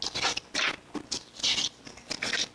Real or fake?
real